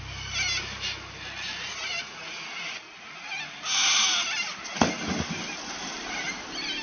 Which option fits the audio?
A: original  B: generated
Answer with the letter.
A